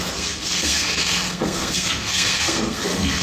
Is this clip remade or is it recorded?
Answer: remade